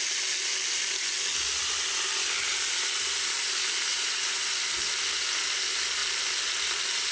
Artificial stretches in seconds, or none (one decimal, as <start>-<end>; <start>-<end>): 3.9-4.5